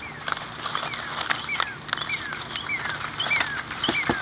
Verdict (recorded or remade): recorded